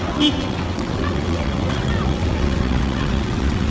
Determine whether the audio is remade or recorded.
remade